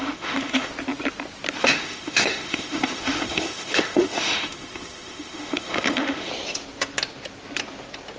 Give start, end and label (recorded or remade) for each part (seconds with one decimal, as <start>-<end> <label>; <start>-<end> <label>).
0.0-0.7 remade; 0.7-1.6 recorded; 1.6-6.3 remade; 6.3-8.2 recorded